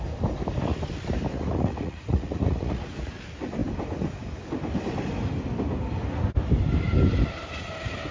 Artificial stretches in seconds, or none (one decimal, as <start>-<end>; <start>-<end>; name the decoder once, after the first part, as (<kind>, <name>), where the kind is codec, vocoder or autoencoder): 1.3-3.1 (vocoder, Vocos)